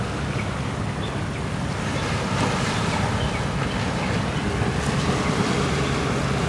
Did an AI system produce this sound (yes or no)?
no